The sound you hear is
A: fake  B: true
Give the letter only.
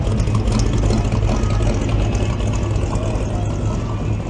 B